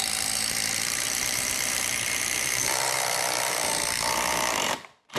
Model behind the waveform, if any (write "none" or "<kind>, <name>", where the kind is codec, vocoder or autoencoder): vocoder, BigVGAN v2